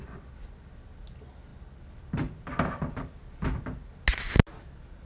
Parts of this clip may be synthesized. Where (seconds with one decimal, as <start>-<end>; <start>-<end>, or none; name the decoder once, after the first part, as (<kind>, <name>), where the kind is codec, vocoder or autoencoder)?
none